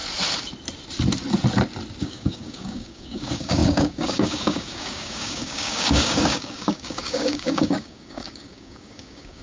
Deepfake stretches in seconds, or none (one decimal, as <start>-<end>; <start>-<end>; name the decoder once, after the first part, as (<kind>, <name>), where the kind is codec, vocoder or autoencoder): 2.0-9.4 (codec, DAC)